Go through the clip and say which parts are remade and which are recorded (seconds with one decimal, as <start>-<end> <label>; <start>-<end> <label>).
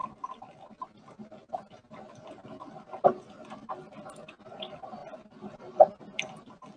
0.0-6.8 recorded